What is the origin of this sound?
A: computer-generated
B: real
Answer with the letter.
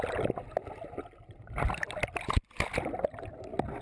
B